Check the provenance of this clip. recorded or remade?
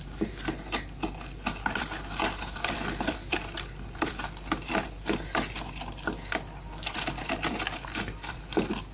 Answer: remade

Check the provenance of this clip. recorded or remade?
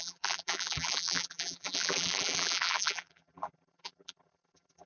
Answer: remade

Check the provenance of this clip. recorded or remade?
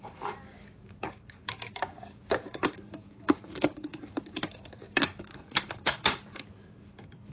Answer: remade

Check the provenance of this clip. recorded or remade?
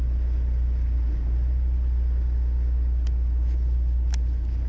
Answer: recorded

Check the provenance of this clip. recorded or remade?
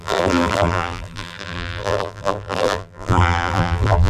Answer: remade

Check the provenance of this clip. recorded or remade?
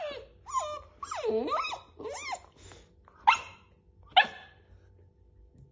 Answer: recorded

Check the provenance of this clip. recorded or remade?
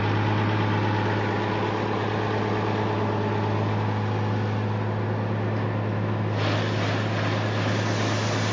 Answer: recorded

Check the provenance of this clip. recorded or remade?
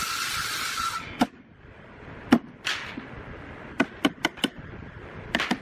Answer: recorded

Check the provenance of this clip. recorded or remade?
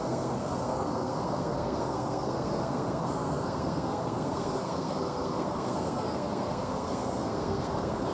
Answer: remade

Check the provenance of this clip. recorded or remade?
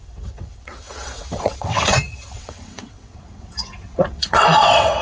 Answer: remade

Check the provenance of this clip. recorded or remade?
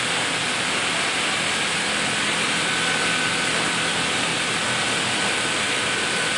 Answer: recorded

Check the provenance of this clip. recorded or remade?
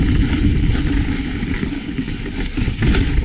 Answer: recorded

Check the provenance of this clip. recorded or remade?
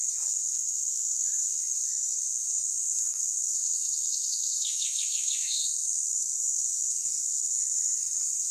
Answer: remade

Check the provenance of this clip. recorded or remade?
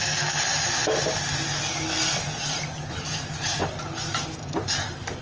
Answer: recorded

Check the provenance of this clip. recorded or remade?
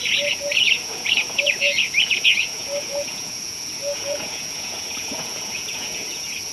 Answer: remade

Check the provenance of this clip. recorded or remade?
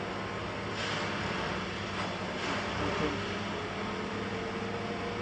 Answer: recorded